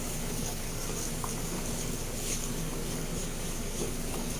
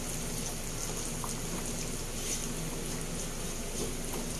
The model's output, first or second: first